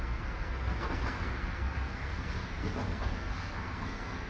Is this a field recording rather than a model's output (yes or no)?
no